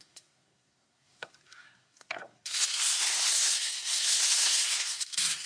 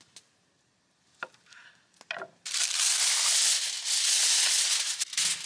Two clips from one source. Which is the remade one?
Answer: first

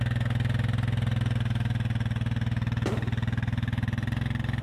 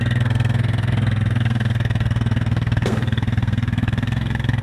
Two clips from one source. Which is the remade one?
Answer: second